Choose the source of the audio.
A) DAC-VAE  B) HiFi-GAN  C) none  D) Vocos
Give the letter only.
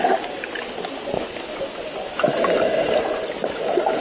C